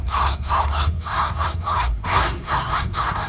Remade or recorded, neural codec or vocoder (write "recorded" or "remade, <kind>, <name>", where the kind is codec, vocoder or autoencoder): remade, codec, SNAC